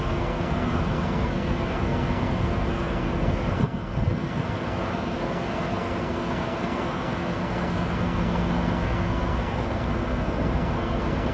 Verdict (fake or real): fake